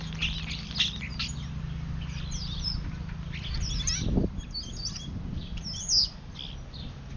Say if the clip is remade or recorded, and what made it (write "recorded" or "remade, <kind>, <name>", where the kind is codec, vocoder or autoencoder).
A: recorded